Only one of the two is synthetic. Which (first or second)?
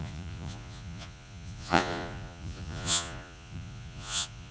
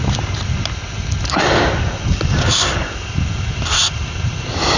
first